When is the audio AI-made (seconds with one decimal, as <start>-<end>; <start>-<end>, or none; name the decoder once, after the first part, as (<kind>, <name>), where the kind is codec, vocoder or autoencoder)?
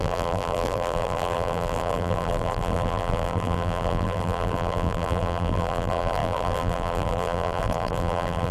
0.0-8.5 (vocoder, BigVGAN v2)